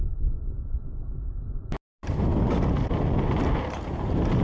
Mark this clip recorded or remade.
recorded